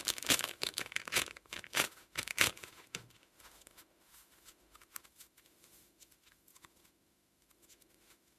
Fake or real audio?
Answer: fake